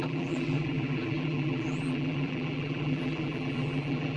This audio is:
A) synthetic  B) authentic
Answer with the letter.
A